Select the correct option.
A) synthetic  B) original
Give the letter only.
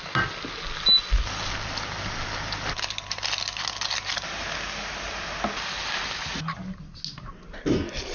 B